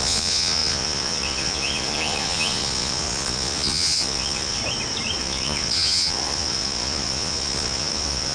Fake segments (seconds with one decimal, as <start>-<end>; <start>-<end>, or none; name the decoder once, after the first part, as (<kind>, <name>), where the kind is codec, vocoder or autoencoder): 0.0-4.6 (vocoder, Vocos); 5.2-8.3